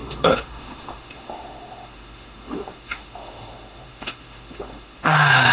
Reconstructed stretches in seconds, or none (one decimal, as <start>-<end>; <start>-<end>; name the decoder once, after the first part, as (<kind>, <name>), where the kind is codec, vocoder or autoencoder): 0.0-5.5 (autoencoder, DAC-VAE)